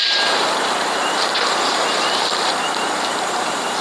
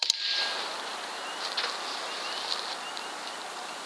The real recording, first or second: second